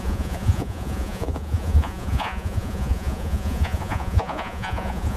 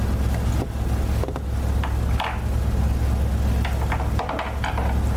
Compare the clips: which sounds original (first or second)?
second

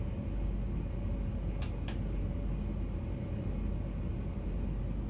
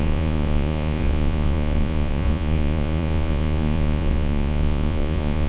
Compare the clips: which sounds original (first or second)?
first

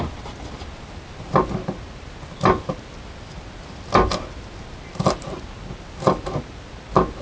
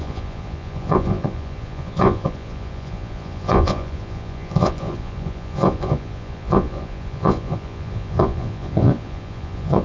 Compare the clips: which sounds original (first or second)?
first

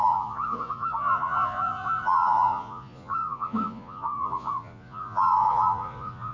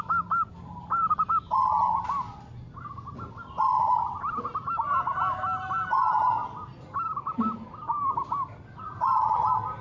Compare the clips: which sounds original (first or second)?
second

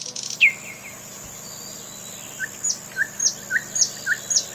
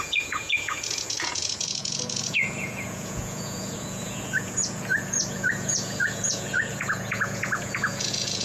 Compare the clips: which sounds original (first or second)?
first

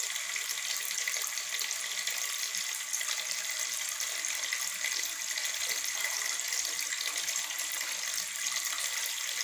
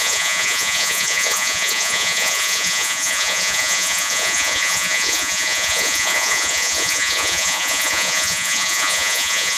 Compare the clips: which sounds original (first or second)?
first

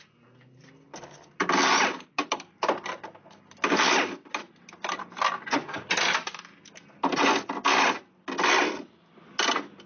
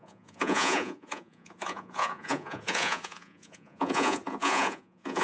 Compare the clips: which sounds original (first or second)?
first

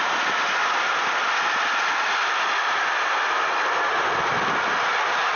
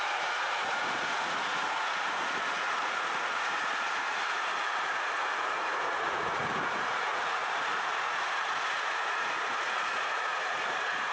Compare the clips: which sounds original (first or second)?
first